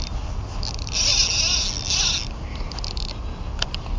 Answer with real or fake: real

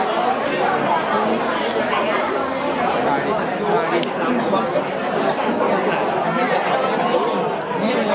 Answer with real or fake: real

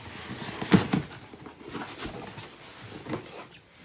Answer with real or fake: real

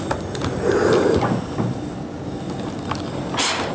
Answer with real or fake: real